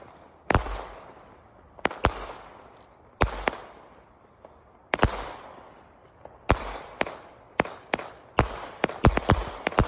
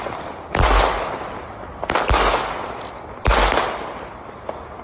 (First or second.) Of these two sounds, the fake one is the first